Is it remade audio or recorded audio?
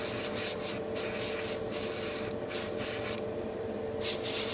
recorded